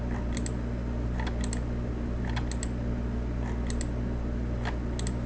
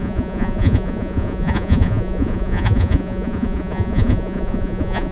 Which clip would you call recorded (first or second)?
first